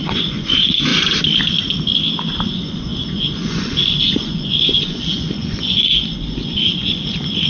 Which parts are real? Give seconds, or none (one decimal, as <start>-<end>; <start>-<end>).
0.9-2.5